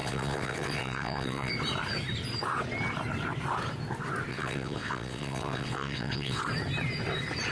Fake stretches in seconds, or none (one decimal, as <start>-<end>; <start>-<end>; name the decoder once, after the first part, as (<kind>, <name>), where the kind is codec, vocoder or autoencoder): 0.0-1.5 (vocoder, WaveNeXt); 4.3-6.4